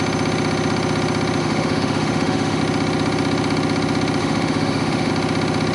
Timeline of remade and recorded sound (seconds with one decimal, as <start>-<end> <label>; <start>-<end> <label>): 0.0-1.4 recorded; 1.4-2.6 remade; 2.6-4.2 recorded; 4.2-5.1 remade; 5.1-5.7 recorded